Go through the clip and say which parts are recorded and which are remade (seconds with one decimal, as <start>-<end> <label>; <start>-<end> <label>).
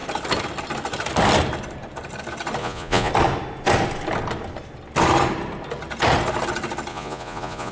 0.0-2.6 recorded; 2.6-3.1 remade; 3.1-6.9 recorded; 6.9-7.7 remade